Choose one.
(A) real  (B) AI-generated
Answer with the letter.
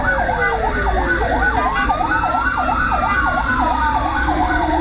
A